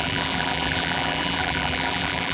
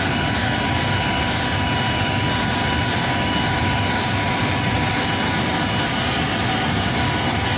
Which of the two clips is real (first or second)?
second